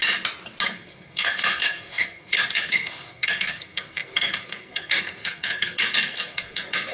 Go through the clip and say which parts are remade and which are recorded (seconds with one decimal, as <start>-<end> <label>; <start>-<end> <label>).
0.0-0.7 recorded; 0.7-6.9 remade